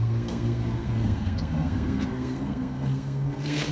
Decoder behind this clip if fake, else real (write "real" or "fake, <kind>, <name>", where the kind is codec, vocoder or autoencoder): fake, codec, SNAC